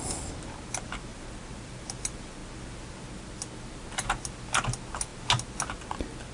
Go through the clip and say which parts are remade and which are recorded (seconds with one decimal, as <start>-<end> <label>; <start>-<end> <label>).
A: 0.0-6.3 recorded